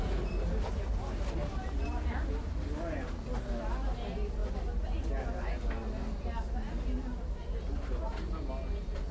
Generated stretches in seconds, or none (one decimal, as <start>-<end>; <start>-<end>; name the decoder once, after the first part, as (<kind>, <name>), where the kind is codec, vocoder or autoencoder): none